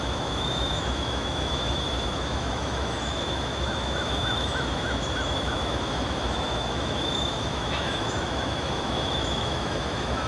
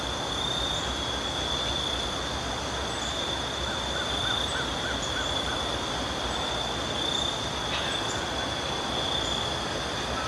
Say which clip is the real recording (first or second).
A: second